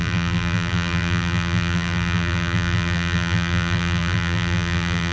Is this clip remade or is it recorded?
remade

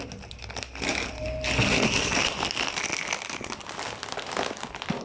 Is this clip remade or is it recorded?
recorded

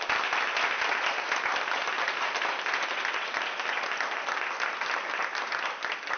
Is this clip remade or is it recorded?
recorded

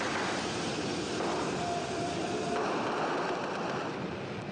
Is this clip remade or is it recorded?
recorded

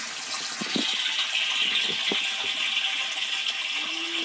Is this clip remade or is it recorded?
recorded